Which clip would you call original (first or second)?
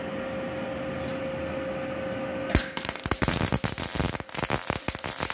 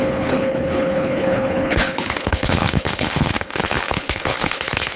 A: first